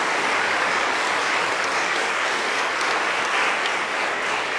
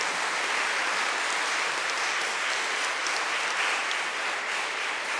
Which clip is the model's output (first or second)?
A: first